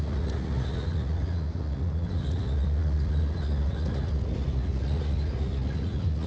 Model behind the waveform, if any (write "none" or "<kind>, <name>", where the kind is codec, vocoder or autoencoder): vocoder, Vocos